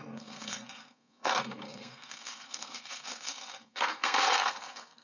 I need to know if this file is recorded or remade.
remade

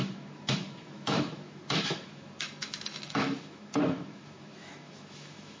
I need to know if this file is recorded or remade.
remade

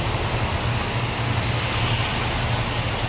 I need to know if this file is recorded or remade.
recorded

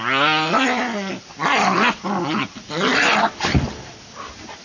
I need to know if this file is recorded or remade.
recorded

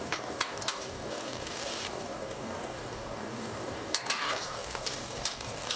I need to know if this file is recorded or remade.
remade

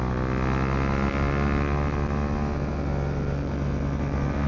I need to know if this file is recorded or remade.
recorded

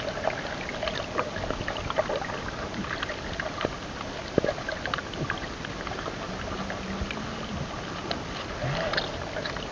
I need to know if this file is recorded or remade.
recorded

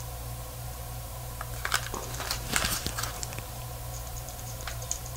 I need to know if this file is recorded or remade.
remade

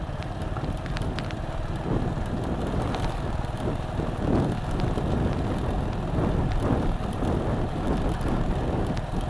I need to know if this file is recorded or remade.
recorded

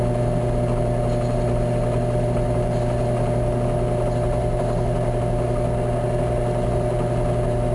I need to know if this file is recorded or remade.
recorded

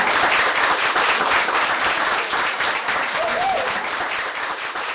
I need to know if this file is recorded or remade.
remade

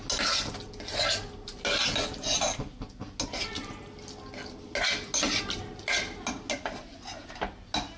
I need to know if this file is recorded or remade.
recorded